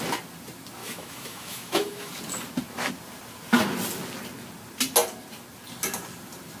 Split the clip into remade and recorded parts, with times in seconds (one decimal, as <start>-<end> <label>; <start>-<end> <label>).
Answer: 0.0-0.8 recorded; 0.8-2.1 remade; 2.1-6.6 recorded